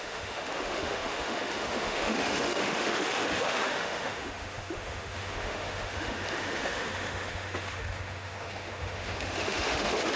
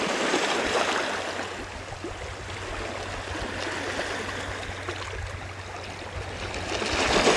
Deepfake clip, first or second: first